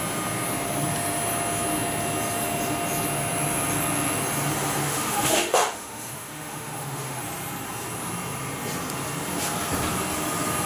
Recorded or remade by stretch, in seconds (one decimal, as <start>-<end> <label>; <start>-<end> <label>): 0.0-4.8 recorded; 4.8-7.2 remade; 7.2-10.7 recorded